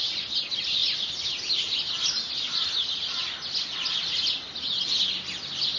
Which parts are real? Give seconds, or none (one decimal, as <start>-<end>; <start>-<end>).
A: 0.0-5.8